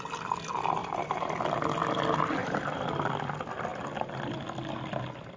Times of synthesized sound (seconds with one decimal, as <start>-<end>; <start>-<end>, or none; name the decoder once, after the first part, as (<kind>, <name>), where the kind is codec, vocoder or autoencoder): 0.8-1.3 (vocoder, BigVGAN v2); 2.4-2.9